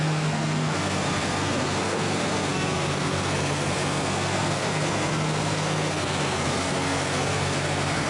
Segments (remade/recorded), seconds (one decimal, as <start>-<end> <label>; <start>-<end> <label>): 0.0-8.1 remade